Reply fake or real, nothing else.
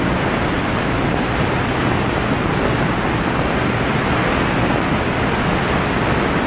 real